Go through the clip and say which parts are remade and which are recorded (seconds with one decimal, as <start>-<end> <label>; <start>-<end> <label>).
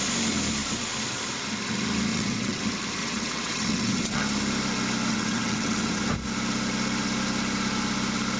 0.0-2.1 recorded; 2.1-2.6 remade; 2.6-3.0 recorded; 3.0-4.2 remade; 4.2-5.1 recorded; 5.1-6.0 remade; 6.0-8.4 recorded